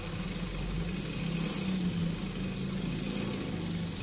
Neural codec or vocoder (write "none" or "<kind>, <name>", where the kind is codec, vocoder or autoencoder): none